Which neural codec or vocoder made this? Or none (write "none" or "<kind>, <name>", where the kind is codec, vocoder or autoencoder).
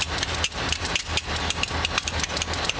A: none